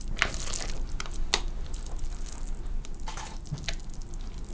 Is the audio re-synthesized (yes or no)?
no